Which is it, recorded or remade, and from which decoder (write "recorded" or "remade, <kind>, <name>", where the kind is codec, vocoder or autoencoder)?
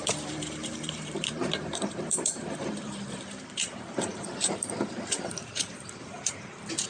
remade, vocoder, BigVGAN v2